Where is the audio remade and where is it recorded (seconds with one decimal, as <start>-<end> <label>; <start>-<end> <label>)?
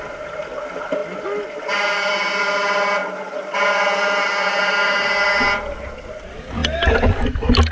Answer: 0.0-7.7 recorded